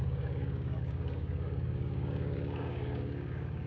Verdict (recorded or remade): remade